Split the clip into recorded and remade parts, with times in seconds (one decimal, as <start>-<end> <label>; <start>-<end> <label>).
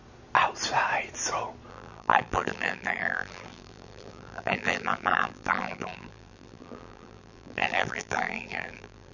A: 0.0-1.7 recorded; 1.7-9.1 remade